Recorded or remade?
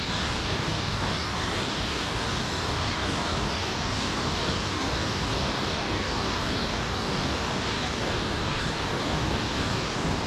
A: remade